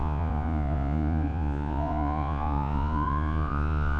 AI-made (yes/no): yes